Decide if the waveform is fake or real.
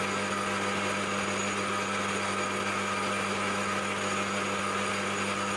real